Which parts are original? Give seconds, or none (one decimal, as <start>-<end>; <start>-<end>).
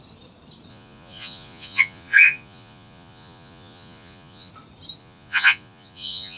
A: 0.0-0.7; 4.5-5.0